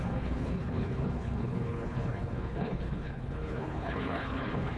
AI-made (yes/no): yes